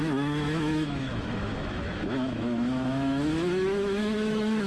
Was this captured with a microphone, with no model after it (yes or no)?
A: no